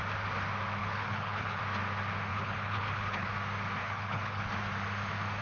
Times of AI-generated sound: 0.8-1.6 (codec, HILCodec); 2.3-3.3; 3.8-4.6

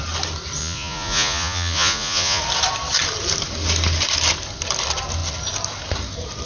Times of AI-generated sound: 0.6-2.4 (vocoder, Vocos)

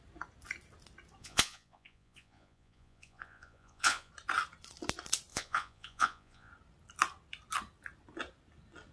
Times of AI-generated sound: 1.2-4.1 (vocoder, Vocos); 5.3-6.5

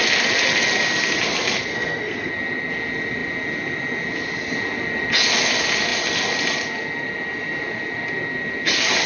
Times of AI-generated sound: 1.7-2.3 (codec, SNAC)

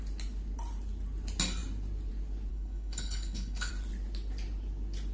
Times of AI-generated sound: 2.5-3.7 (codec, HILCodec)

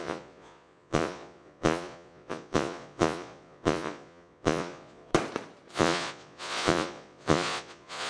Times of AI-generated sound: 0.0-5.1 (vocoder, Vocos); 5.7-8.1

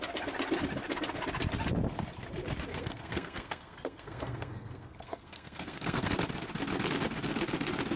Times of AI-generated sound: 2.7-6.1 (codec, SNAC)